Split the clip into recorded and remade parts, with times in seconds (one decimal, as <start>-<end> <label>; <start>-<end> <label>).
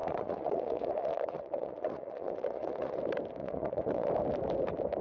0.0-3.0 remade; 3.0-3.4 recorded; 3.4-4.1 remade; 4.1-5.0 recorded